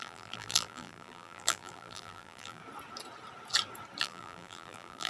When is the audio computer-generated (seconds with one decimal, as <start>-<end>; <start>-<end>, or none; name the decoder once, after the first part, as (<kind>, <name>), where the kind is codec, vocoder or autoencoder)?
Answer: 0.0-2.6 (vocoder, BigVGAN v2); 4.0-5.1